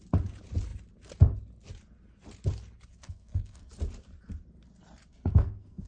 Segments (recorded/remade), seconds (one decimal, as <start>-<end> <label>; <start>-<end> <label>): 0.0-2.9 recorded; 2.9-3.7 remade; 3.7-5.1 recorded; 5.1-5.9 remade